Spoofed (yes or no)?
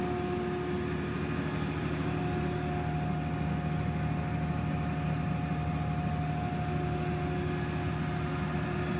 no